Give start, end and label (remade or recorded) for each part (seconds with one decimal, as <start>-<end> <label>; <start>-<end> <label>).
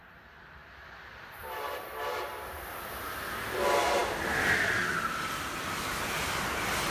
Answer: 0.0-6.9 recorded